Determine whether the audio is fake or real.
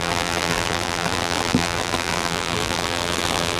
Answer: fake